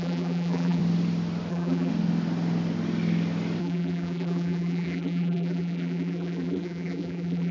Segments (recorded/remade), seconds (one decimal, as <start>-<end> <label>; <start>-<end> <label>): 0.0-0.8 remade; 0.8-1.5 recorded; 1.5-1.9 remade; 1.9-3.6 recorded; 3.6-7.5 remade